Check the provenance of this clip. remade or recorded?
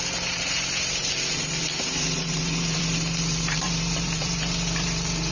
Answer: remade